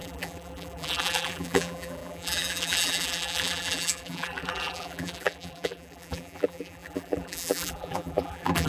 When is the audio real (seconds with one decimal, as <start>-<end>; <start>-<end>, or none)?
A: none